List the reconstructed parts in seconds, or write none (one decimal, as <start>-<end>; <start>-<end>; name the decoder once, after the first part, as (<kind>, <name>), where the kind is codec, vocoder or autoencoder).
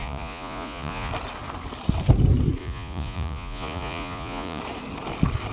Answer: 0.0-1.1 (vocoder, Vocos); 2.6-4.6